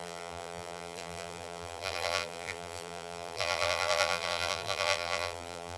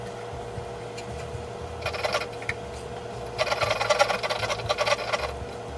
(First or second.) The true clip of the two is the second